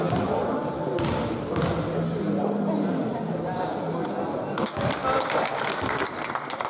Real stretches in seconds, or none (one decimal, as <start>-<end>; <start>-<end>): 0.0-6.7